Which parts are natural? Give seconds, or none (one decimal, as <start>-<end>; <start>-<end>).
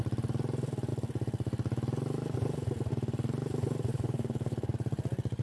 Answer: 0.0-3.9; 4.7-5.4